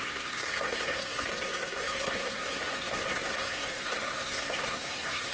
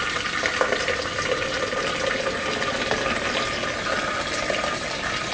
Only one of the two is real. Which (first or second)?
second